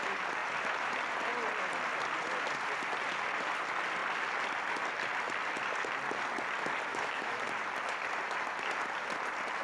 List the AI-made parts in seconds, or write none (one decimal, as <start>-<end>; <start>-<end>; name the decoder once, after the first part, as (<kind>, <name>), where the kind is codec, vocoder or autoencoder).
6.9-7.4 (autoencoder, DAC-VAE)